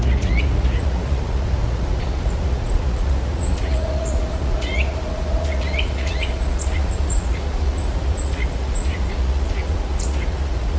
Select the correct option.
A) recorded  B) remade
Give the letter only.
B